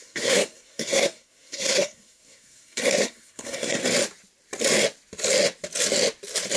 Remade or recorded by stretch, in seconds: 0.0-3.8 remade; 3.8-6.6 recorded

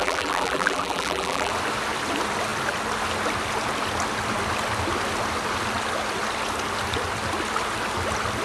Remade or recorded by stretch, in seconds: 0.0-1.5 remade; 1.5-8.4 recorded

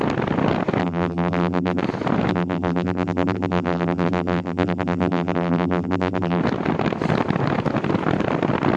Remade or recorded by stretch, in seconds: 0.0-0.8 recorded; 0.8-1.8 remade; 1.8-2.3 recorded; 2.3-6.4 remade; 6.4-8.8 recorded

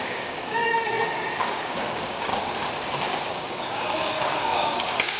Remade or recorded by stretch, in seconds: 0.0-2.3 remade; 2.3-3.3 recorded; 3.3-5.2 remade

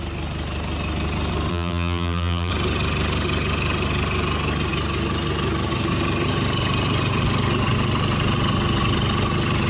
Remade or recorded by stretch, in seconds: 0.0-1.5 recorded; 1.5-2.5 remade; 2.5-9.7 recorded

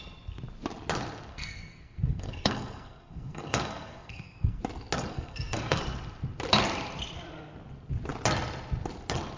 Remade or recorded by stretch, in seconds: 0.0-1.3 recorded; 1.3-4.6 remade; 4.6-5.1 recorded; 5.1-5.8 remade; 5.8-9.4 recorded

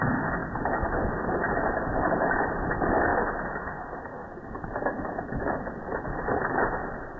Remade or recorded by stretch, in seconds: 0.0-7.2 recorded

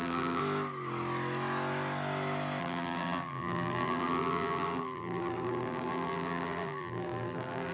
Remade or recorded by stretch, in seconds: 0.0-0.4 remade; 0.4-2.6 recorded; 2.6-7.7 remade